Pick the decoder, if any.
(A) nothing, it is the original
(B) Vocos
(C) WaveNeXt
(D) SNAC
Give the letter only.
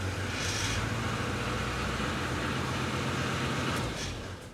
A